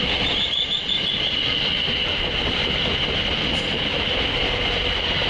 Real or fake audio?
real